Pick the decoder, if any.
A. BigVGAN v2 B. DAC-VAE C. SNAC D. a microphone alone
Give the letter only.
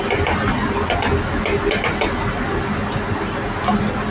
D